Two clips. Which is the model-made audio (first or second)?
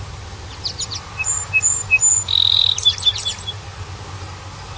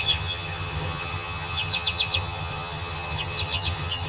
second